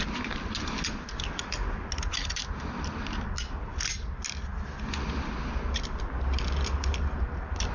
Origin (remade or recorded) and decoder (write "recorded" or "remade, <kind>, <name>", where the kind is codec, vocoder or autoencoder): recorded